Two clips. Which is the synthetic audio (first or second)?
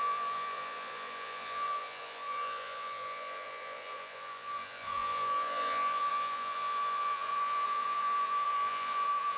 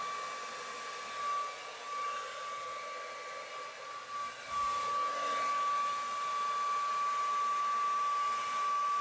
first